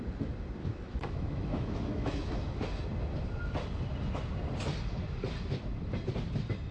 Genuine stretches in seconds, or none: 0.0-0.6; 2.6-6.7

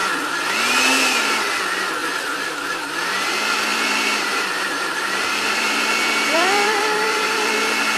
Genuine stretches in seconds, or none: 0.5-3.7; 7.5-8.0

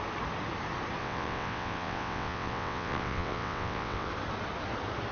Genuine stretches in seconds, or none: 0.0-1.0; 4.1-5.1

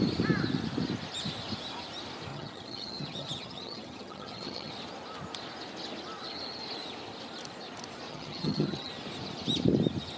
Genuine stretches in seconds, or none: 0.0-2.3; 4.7-8.1; 8.9-10.2

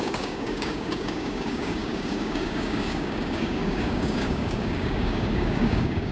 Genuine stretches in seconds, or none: none

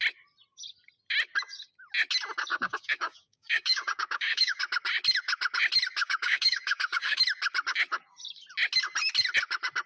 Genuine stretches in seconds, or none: 0.0-2.5; 4.6-6.0; 7.2-9.9

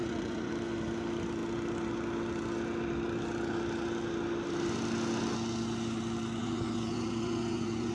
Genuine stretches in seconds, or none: 0.5-6.4